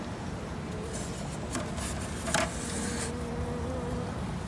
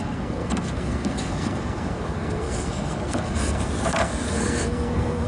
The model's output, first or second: second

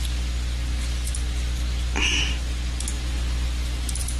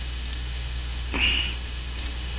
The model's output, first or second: second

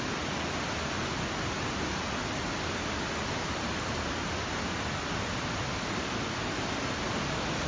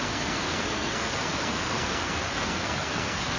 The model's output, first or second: second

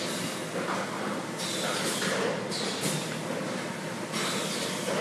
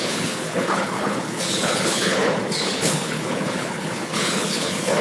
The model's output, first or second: second